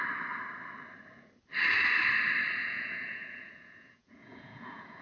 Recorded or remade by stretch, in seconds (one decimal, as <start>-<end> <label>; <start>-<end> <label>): 0.0-2.6 recorded; 2.6-5.0 remade